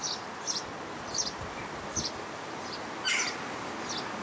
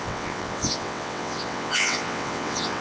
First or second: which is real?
first